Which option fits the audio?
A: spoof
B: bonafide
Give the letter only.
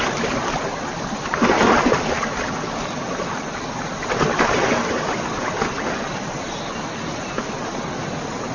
B